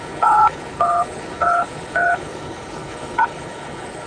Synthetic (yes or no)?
yes